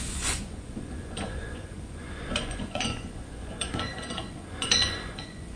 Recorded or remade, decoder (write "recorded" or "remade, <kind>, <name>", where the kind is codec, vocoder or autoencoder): remade, vocoder, Vocos